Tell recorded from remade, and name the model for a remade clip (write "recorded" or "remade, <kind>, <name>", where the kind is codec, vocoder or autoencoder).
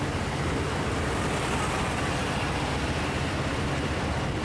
recorded